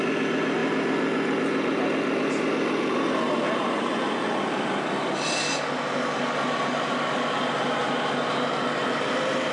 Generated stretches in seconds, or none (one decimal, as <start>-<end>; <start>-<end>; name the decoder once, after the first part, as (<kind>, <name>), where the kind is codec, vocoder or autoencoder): none